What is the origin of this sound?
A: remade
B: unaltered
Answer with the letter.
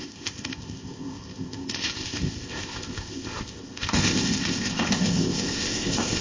A